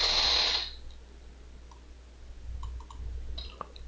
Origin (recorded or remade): recorded